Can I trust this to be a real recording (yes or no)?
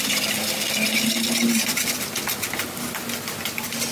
yes